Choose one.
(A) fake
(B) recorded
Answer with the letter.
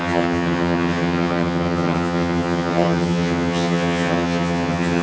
A